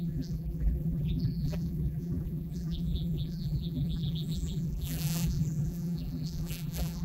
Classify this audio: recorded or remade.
remade